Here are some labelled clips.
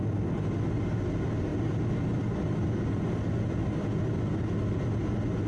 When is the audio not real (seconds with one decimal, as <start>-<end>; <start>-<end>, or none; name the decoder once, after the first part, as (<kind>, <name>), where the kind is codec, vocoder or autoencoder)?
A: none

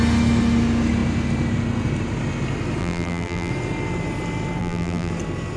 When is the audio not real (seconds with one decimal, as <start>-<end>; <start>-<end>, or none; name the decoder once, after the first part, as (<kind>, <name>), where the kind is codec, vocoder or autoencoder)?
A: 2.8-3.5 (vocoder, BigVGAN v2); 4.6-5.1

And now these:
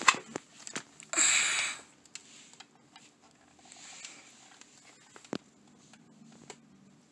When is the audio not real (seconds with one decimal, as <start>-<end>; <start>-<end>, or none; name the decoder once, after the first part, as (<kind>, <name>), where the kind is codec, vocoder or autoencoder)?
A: none